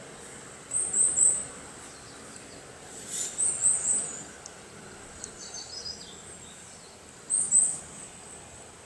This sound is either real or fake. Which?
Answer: real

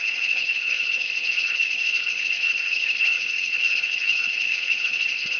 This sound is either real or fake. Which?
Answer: fake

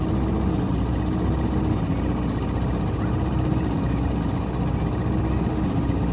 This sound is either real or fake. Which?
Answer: real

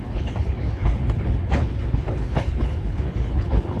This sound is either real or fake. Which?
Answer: fake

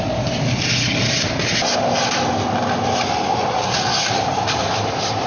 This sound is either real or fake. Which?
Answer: real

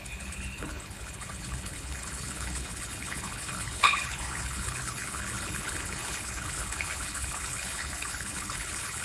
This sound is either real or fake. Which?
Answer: fake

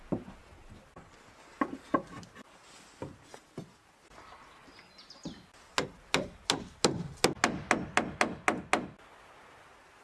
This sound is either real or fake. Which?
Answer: real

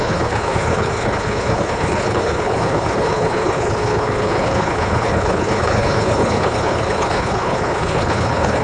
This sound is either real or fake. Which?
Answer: fake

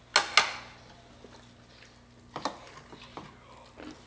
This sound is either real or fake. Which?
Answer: real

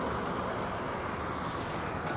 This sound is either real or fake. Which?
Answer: real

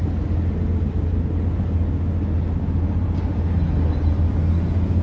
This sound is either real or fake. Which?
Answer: real